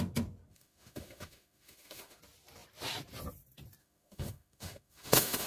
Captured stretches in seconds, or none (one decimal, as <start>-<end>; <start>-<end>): 0.0-0.5; 2.2-3.8